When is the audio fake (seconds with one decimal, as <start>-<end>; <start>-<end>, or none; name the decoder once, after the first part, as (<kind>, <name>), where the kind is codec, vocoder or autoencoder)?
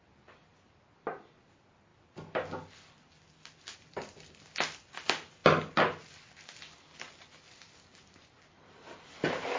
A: none